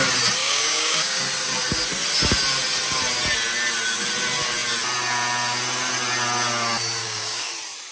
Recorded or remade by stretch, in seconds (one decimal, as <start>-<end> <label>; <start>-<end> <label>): 0.0-0.4 recorded; 0.4-1.2 remade; 1.2-7.0 recorded; 7.0-7.5 remade; 7.5-7.9 recorded